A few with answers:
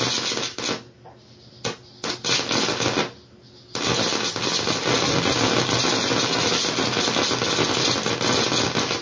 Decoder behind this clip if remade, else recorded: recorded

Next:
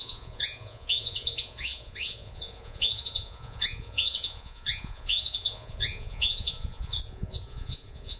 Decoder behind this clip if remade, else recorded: remade, vocoder, Vocos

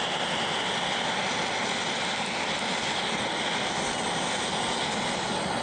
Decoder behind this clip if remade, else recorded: recorded